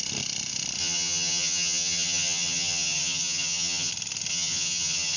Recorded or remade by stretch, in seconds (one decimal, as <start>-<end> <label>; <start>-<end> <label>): 0.0-0.8 recorded; 0.8-3.9 remade; 3.9-4.3 recorded; 4.3-5.2 remade